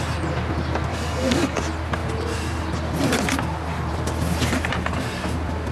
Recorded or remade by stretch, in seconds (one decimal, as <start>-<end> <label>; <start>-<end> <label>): 0.0-0.9 recorded; 0.9-1.6 remade; 1.6-5.7 recorded